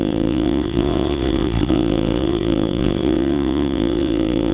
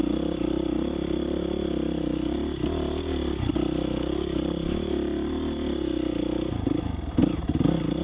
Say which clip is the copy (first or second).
first